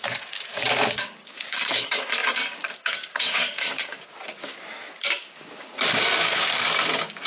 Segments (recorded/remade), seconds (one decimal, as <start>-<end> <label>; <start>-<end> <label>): 0.0-7.3 remade